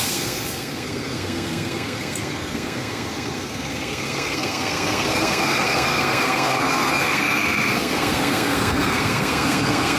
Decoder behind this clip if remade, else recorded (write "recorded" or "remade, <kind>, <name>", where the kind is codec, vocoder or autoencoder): remade, codec, SNAC